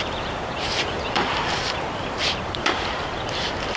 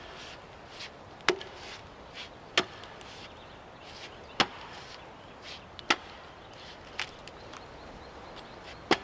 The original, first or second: second